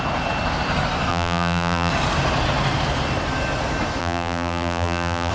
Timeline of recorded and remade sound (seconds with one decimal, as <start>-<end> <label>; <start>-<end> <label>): 0.0-1.1 recorded; 1.1-1.9 remade; 1.9-4.0 recorded; 4.0-5.3 remade